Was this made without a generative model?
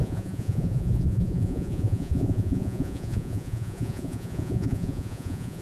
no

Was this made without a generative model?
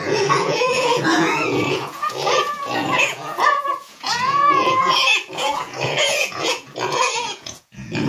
no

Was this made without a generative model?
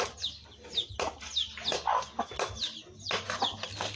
yes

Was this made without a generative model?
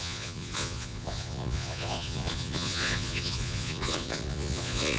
no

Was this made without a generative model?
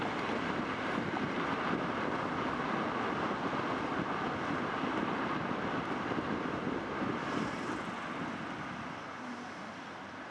yes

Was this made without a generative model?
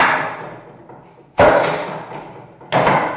yes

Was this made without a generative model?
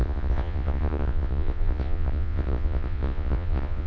no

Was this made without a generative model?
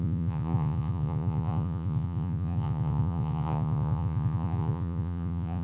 no